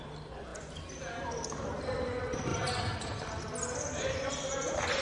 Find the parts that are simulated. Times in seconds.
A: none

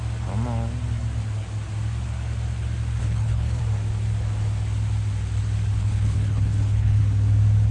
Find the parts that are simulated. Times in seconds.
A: 3.0-3.6; 5.8-7.0

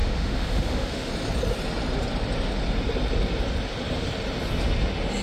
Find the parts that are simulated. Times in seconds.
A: 0.0-1.1

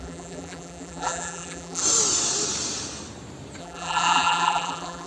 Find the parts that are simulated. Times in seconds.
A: 0.0-1.8; 3.6-5.1

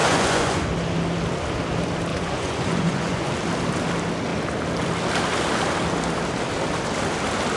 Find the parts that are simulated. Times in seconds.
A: 0.0-0.6; 2.1-3.3